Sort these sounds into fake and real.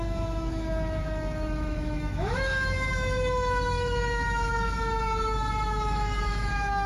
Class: fake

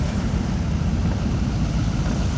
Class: real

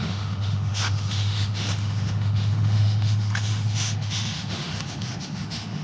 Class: fake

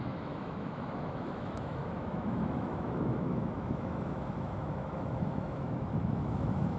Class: fake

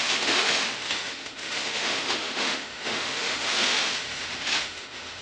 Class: fake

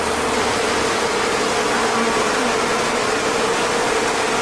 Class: real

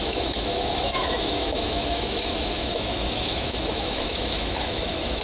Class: fake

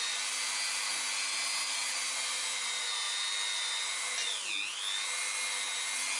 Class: real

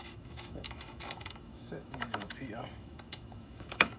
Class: fake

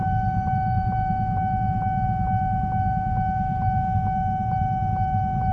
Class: fake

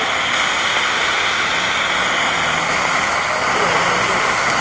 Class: real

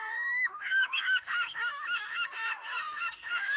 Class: fake